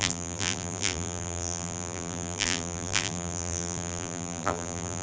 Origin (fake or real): fake